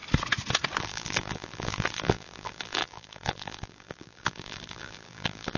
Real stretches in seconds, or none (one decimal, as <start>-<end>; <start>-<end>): 0.0-0.8